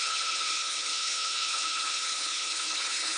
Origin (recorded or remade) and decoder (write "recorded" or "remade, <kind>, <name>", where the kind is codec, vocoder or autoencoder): remade, codec, HILCodec